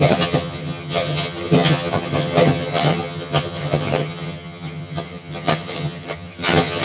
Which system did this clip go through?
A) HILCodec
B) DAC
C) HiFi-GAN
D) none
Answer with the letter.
C